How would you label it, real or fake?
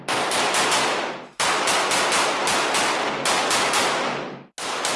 real